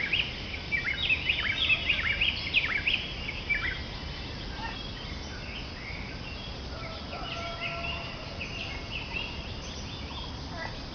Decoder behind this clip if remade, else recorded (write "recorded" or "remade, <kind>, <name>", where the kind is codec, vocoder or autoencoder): recorded